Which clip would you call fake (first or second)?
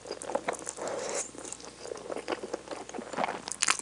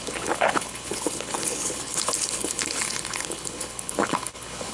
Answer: second